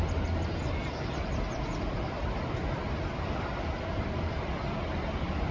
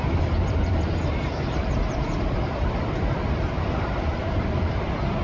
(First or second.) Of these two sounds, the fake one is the second